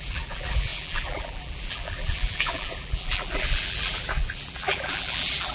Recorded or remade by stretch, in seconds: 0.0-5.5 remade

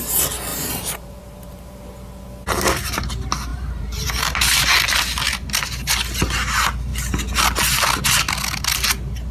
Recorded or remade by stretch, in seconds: 0.0-0.5 recorded; 0.5-1.8 remade; 1.8-3.5 recorded; 3.5-4.2 remade; 4.2-9.3 recorded

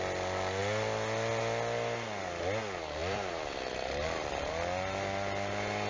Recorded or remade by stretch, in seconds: 0.0-3.0 recorded; 3.0-4.5 remade; 4.5-5.9 recorded

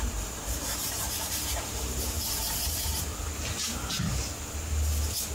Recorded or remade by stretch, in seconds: 0.0-3.1 remade; 3.1-5.3 recorded

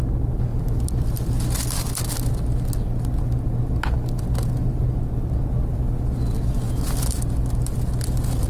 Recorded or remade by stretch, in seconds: 0.0-8.5 recorded